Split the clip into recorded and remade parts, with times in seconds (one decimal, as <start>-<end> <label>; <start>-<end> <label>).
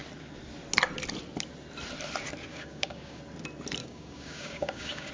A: 0.0-2.5 recorded; 2.5-3.2 remade; 3.2-3.8 recorded; 3.8-5.1 remade